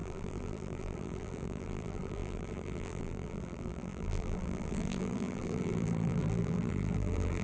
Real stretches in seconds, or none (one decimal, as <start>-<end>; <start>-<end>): none